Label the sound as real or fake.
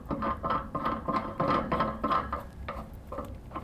real